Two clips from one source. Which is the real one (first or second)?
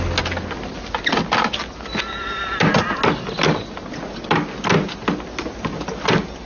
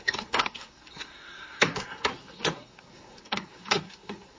first